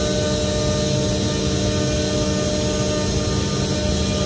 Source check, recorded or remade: recorded